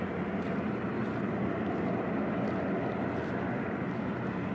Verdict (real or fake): real